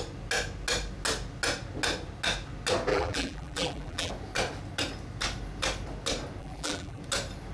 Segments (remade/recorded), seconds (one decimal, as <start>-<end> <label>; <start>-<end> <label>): 0.0-2.9 recorded; 2.9-4.1 remade; 4.1-6.4 recorded; 6.4-7.0 remade; 7.0-7.5 recorded